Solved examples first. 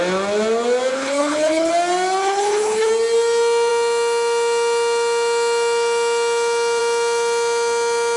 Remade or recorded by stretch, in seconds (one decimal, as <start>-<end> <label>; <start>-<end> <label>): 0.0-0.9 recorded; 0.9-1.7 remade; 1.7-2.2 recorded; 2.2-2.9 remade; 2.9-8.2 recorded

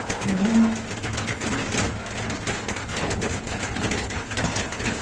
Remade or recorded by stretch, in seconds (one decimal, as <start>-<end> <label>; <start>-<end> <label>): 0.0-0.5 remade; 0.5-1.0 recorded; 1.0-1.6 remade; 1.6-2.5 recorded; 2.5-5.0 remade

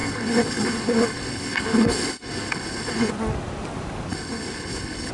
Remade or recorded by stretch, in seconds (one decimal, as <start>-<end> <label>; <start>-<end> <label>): 0.0-3.1 remade; 3.1-4.1 recorded; 4.1-5.1 remade

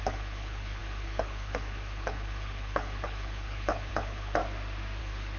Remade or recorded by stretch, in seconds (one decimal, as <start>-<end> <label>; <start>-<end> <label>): 0.0-4.4 remade; 4.4-5.0 recorded; 5.0-5.4 remade

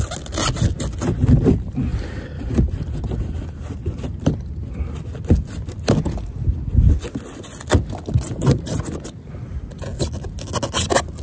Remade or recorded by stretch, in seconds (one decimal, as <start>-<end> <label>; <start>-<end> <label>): 0.0-11.2 recorded